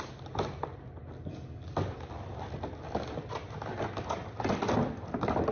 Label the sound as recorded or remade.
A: recorded